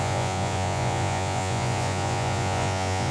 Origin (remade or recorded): remade